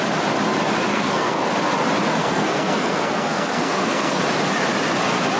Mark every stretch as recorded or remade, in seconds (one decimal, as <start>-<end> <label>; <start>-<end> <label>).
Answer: 0.0-0.9 recorded; 0.9-1.5 remade; 1.5-2.2 recorded; 2.2-4.2 remade; 4.2-5.4 recorded